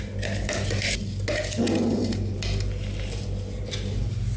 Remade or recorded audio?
recorded